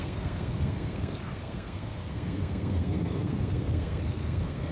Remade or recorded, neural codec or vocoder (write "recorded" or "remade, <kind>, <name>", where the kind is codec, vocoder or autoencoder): remade, codec, SNAC